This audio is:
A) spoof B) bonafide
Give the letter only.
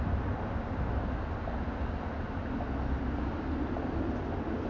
B